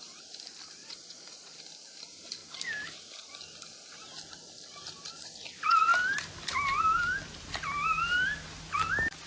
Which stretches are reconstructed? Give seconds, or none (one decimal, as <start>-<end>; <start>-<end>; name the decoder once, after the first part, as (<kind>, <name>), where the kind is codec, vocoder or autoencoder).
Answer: 0.8-1.6 (vocoder, Vocos)

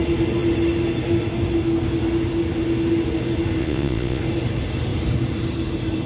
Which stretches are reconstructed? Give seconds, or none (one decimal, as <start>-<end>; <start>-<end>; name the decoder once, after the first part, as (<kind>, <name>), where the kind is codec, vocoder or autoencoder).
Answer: 3.6-4.2 (vocoder, Vocos)

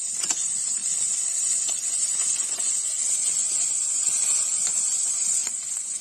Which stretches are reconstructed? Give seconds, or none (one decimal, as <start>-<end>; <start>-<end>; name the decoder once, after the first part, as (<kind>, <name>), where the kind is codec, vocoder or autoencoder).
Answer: 0.0-0.8 (vocoder, Vocos); 1.9-6.0

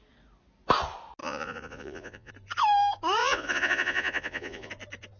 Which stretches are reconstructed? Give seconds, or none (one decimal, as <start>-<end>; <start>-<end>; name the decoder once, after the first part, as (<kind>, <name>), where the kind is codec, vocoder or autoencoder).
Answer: 1.2-2.3 (vocoder, Vocos); 3.2-4.7

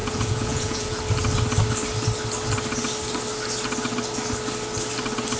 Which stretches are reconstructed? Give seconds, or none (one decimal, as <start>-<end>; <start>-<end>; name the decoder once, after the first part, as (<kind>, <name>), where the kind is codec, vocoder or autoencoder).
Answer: 0.0-1.0 (vocoder, Vocos)